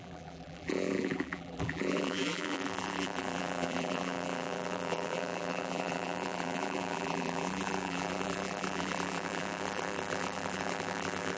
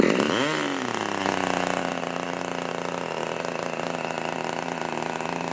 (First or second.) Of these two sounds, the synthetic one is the first